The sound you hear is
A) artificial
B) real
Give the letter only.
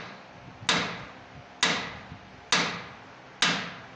B